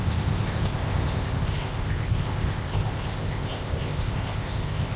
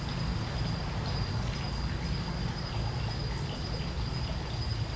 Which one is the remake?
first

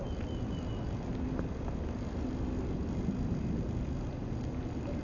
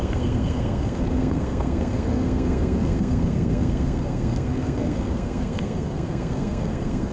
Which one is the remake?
second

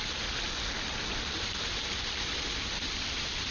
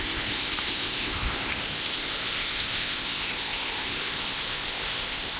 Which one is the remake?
second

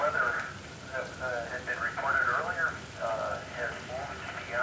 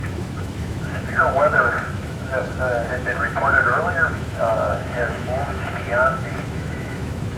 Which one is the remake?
second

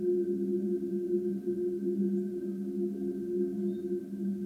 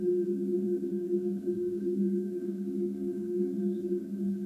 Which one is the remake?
second